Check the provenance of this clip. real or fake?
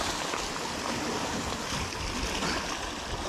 real